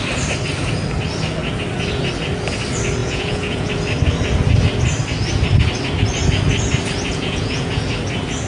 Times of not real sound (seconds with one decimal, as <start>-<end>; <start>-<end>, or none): 3.0-3.7; 7.1-7.9